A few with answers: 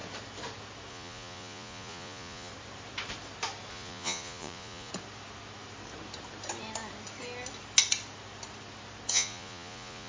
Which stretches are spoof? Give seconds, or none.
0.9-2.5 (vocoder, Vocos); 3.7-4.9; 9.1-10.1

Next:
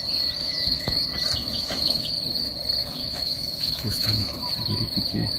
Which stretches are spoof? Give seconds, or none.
0.4-1.0 (autoencoder, DAC-VAE); 1.4-2.1; 2.8-4.4